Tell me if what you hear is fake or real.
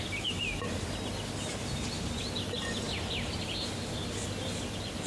real